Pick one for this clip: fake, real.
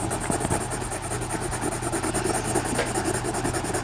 real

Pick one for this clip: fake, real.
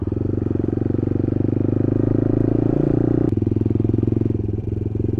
real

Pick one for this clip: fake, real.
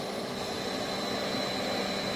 real